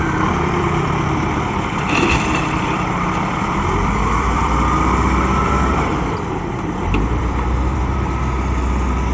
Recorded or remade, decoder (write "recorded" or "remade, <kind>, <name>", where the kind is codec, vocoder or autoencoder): remade, vocoder, BigVGAN v2